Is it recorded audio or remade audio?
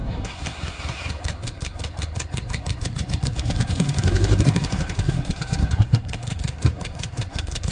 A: remade